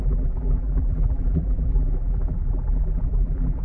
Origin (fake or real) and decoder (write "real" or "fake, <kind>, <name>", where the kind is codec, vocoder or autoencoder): fake, vocoder, BigVGAN v2